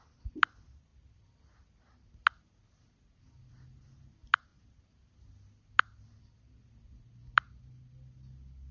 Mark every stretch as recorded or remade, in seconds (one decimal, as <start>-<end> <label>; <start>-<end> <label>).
0.0-8.7 recorded